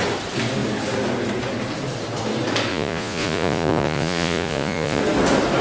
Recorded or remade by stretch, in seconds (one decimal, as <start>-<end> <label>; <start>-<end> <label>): 0.0-2.7 recorded; 2.7-5.0 remade; 5.0-5.6 recorded